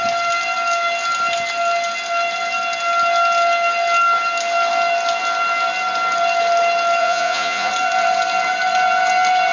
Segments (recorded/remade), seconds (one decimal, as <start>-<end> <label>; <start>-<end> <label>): 0.0-7.0 recorded; 7.0-7.7 remade; 7.7-9.5 recorded